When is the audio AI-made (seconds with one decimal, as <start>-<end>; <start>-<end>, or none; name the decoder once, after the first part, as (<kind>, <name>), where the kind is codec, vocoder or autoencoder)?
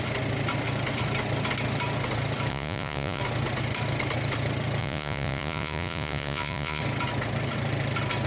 2.5-3.2 (vocoder, Vocos); 4.8-6.8